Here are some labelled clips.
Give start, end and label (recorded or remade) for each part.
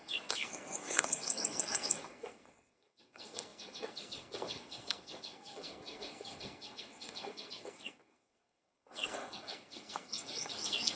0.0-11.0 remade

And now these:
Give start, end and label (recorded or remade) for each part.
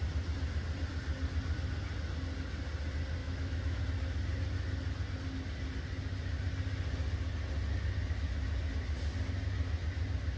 0.0-3.2 recorded; 3.2-3.8 remade; 3.8-10.4 recorded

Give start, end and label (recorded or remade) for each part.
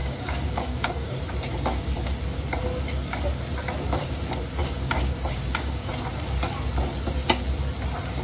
0.0-1.1 remade; 1.1-4.6 recorded; 4.6-5.9 remade; 5.9-8.2 recorded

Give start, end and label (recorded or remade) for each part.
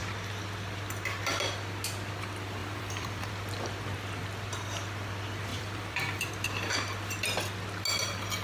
0.0-2.6 recorded; 2.6-3.3 remade; 3.3-5.5 recorded; 5.5-6.3 remade; 6.3-8.4 recorded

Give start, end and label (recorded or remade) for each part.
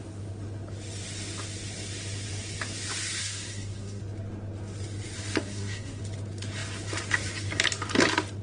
0.0-3.2 recorded; 3.2-4.0 remade; 4.0-5.4 recorded; 5.4-6.0 remade; 6.0-8.4 recorded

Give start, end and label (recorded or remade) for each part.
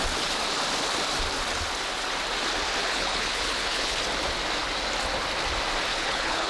0.0-2.8 recorded; 2.8-4.0 remade; 4.0-5.9 recorded; 5.9-6.5 remade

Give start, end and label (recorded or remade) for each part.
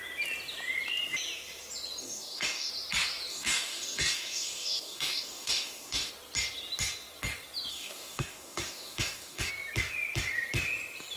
0.0-2.0 recorded; 2.0-2.7 remade; 2.7-3.3 recorded; 3.3-6.1 remade; 6.1-7.7 recorded; 7.7-9.5 remade; 9.5-11.2 recorded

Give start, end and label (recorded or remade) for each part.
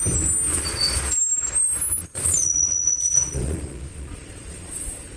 0.0-0.5 recorded; 0.5-1.1 remade; 1.1-2.0 recorded; 2.0-5.2 remade